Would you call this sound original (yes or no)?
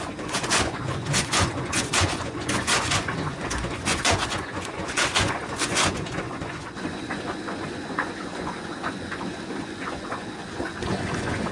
no